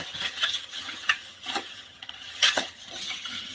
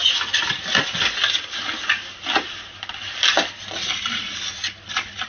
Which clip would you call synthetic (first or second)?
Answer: first